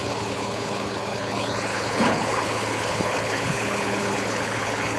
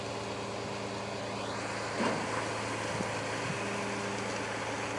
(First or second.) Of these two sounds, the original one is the second